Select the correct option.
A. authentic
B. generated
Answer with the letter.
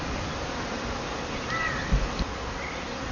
A